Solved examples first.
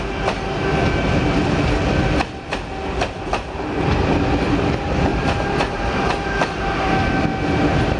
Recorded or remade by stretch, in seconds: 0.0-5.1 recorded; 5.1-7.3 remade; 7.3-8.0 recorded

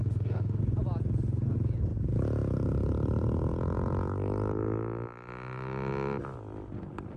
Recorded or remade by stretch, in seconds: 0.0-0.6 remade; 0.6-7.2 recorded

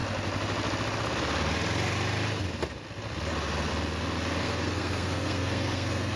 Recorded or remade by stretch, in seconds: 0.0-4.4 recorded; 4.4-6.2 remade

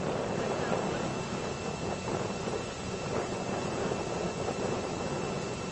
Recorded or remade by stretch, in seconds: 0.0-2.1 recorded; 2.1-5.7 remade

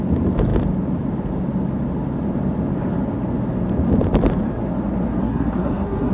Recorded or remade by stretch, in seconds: 0.0-5.2 recorded; 5.2-6.1 remade